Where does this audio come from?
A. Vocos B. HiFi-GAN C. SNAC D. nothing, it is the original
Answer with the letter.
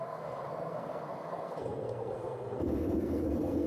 C